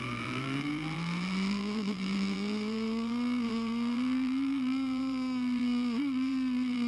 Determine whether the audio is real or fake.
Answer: fake